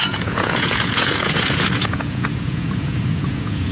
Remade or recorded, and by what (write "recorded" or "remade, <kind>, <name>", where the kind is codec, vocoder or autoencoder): remade, vocoder, Vocos